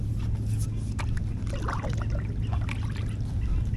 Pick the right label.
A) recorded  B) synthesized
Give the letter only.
A